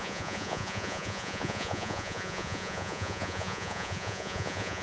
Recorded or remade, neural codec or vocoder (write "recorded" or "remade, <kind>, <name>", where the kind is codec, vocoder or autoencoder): remade, vocoder, Vocos